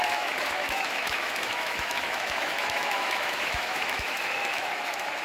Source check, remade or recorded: remade